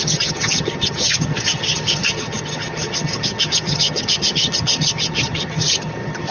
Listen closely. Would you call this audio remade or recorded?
remade